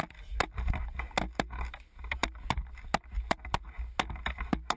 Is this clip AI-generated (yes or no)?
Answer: no